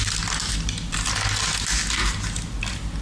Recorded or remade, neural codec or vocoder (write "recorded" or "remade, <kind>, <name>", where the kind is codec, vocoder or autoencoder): recorded